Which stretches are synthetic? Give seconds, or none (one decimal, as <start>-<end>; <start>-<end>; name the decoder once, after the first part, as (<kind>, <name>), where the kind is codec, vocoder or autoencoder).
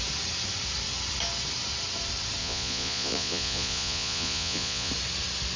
2.4-4.9 (vocoder, Vocos)